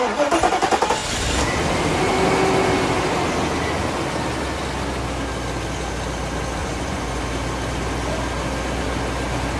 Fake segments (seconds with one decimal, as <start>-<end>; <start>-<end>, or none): 6.6-7.2